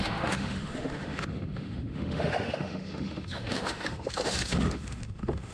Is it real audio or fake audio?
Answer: fake